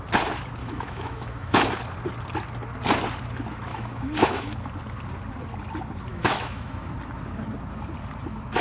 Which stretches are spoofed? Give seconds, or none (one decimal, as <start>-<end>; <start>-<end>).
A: 0.6-1.7; 3.7-4.5; 6.1-6.9